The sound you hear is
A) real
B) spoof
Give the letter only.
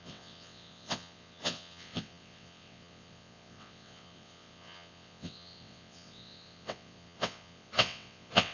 B